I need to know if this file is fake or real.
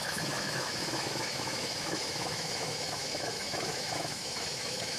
fake